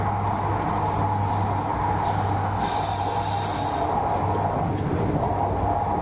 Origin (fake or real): real